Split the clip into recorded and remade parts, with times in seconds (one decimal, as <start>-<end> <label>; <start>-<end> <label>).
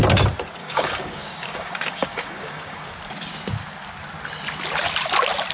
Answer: 0.0-0.6 recorded; 0.6-2.9 remade; 2.9-5.5 recorded